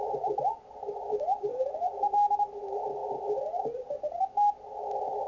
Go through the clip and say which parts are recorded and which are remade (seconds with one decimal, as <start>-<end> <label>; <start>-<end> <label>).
0.0-5.3 recorded